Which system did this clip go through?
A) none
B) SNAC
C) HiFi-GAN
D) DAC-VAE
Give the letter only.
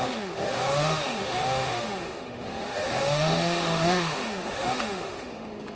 D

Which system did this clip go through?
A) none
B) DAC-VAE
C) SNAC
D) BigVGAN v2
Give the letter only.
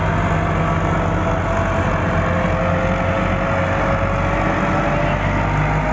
A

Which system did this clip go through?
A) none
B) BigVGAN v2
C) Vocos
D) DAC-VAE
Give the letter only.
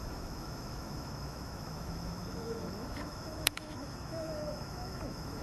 D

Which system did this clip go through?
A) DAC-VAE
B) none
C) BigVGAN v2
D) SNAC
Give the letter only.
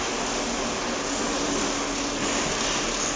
B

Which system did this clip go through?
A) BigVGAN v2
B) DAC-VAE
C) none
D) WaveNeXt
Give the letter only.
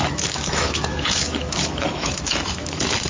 B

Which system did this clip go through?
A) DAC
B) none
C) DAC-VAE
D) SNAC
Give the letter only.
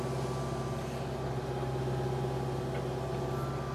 B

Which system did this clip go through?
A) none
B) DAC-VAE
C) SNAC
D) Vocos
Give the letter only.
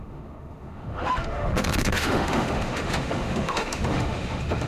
B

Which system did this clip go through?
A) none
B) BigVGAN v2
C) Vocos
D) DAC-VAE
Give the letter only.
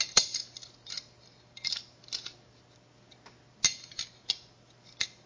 A